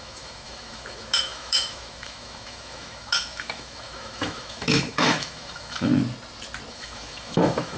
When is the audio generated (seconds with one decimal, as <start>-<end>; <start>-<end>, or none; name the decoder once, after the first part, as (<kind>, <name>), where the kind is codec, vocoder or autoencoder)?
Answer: 0.0-5.9 (autoencoder, DAC-VAE); 6.7-7.8